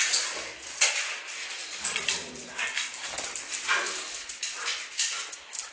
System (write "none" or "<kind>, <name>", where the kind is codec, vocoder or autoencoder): none